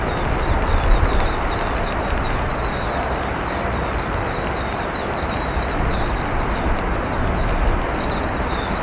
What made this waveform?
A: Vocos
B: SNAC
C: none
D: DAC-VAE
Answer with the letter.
C